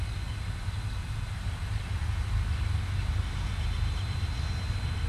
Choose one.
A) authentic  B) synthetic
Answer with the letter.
A